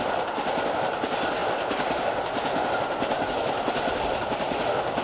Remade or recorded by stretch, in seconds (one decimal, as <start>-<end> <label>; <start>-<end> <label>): 0.0-5.0 recorded